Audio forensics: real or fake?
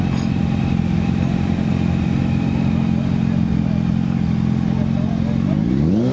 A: real